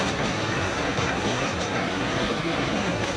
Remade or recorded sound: remade